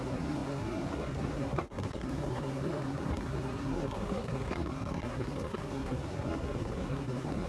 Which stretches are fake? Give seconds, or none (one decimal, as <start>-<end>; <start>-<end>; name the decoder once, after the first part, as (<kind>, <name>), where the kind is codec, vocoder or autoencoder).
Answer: 0.0-7.5 (codec, SNAC)